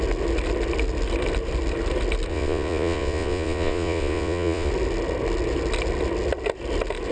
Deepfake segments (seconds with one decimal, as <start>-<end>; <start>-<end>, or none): 2.3-4.7